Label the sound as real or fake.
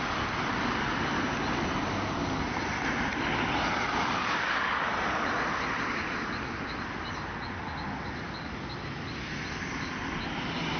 real